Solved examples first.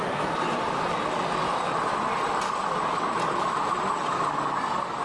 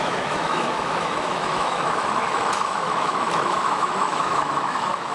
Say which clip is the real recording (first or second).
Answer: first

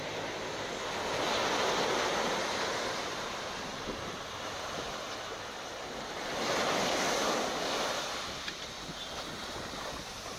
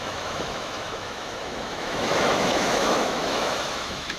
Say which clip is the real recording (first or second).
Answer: first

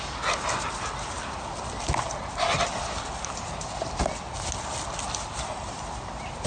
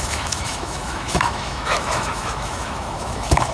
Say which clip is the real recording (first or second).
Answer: first